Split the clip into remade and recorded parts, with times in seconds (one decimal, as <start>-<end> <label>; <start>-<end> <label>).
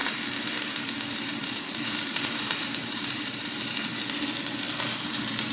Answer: 0.0-0.7 recorded; 0.7-3.9 remade; 3.9-4.7 recorded; 4.7-5.5 remade